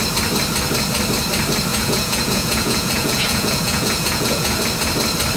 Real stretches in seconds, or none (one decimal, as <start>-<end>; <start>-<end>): 0.0-1.7; 4.6-5.4